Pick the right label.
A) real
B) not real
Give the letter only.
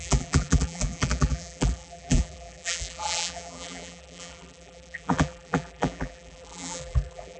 B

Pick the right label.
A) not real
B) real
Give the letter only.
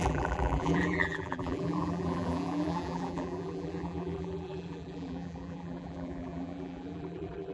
A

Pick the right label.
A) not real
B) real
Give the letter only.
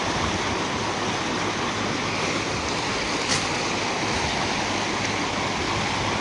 B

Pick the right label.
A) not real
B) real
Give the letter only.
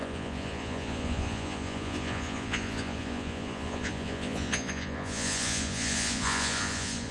A